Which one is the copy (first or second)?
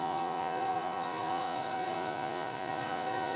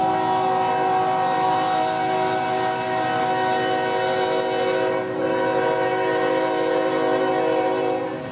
first